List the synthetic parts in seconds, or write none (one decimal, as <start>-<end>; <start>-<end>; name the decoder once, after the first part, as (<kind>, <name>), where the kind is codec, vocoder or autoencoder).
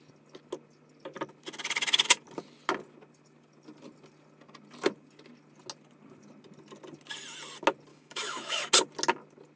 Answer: 7.9-8.6 (autoencoder, DAC-VAE)